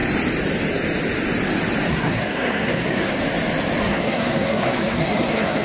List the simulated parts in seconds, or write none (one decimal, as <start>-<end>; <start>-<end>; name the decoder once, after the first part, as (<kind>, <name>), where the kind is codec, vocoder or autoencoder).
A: 1.9-3.1 (codec, SNAC); 3.8-5.6